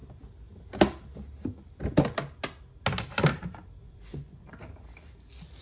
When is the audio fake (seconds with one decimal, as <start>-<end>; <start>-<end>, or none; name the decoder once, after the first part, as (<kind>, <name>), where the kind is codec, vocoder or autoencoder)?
3.8-4.5 (vocoder, Vocos)